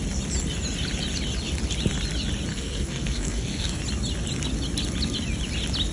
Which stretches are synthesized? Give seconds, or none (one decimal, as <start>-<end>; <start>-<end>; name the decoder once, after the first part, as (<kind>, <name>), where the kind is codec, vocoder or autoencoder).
2.5-3.8 (codec, SNAC)